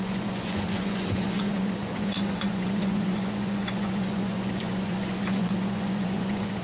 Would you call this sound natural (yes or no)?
no